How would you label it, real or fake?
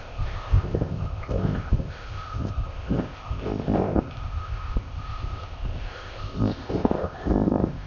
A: fake